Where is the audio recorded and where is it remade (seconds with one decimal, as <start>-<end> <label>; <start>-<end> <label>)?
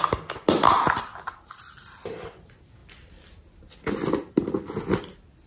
0.0-5.5 recorded